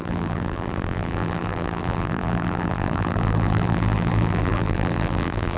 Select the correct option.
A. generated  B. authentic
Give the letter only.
A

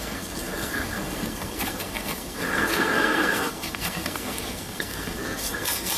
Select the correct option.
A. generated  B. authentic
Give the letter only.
A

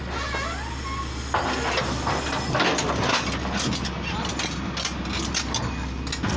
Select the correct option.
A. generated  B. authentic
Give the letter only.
B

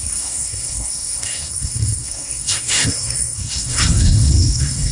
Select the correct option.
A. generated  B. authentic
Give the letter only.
A